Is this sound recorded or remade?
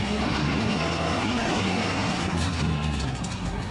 remade